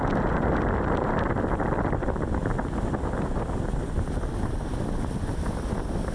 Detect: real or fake real